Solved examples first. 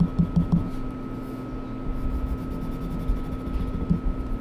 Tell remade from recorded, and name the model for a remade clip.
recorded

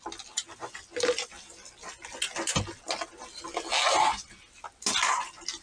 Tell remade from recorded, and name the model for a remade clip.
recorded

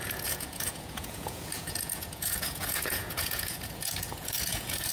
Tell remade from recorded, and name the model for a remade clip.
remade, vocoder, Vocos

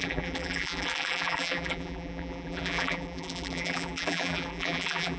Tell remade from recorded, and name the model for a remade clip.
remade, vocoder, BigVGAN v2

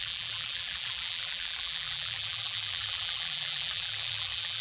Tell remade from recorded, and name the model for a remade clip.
remade, vocoder, BigVGAN v2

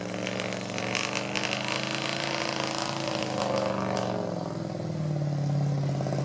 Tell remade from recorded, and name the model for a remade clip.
recorded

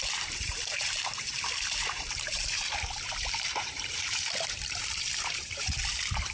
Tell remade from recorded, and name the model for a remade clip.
remade, vocoder, BigVGAN v2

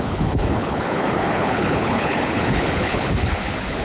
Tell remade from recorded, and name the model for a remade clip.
remade, codec, HILCodec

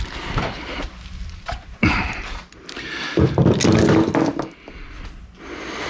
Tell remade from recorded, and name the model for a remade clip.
recorded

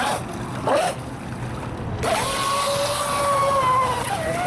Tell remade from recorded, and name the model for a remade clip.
recorded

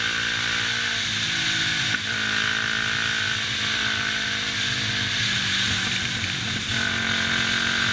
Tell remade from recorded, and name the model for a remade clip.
recorded